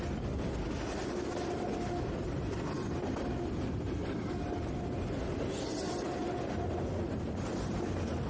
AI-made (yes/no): no